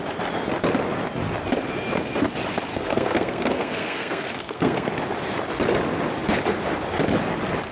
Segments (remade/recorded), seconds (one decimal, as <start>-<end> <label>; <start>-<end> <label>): 0.0-2.7 recorded; 2.7-4.9 remade; 4.9-7.7 recorded